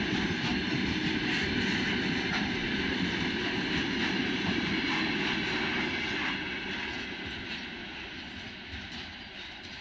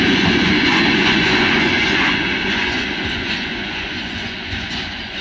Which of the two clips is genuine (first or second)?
first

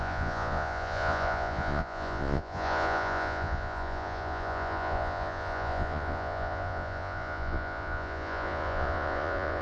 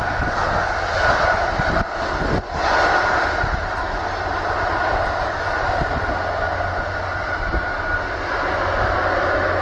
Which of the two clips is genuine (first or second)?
second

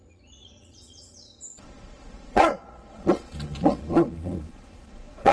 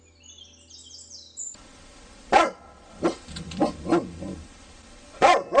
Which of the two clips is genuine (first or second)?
second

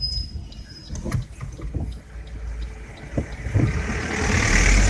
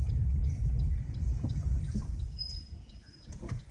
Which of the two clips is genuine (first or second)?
first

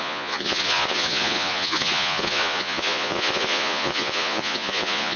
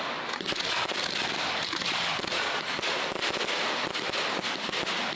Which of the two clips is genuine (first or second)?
second